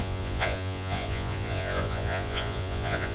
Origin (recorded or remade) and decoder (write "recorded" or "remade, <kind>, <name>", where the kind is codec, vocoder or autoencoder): remade, vocoder, Vocos